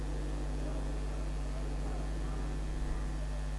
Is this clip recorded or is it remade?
recorded